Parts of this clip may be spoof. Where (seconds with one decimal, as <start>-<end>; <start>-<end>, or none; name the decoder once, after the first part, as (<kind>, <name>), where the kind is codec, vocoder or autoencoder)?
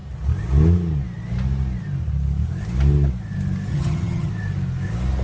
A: 3.7-4.3 (vocoder, HiFi-GAN)